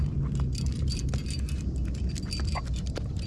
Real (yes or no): yes